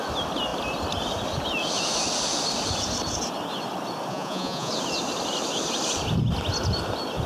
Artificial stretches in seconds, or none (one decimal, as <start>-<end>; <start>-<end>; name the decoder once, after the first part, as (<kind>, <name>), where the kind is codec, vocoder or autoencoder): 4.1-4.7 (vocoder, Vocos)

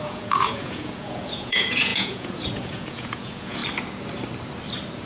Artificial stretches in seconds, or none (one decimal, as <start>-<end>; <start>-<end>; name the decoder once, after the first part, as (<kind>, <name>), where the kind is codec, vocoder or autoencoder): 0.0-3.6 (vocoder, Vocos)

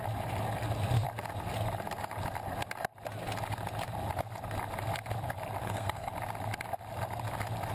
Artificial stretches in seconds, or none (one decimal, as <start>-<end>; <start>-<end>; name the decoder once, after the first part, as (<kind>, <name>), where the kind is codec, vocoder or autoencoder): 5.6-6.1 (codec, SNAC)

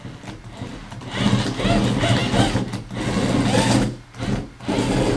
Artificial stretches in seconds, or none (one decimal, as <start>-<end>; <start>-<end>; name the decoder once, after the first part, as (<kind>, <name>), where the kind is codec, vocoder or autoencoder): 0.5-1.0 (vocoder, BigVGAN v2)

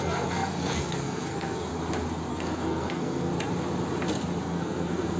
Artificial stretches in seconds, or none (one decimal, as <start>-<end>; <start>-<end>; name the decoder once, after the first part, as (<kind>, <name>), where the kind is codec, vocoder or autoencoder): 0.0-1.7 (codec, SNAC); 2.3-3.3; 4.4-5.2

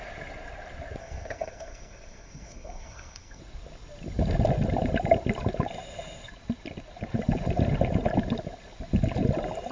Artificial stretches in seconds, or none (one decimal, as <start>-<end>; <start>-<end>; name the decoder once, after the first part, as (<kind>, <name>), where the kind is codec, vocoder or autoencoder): 1.0-3.4 (codec, SNAC)

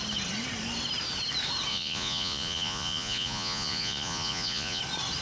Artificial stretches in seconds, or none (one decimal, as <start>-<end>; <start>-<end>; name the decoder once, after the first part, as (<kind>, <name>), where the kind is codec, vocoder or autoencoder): 1.7-4.8 (vocoder, Vocos)